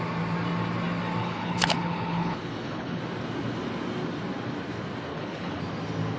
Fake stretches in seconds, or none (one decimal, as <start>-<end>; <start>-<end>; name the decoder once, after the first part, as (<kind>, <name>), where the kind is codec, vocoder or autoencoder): 1.2-3.0 (codec, HILCodec); 5.1-5.6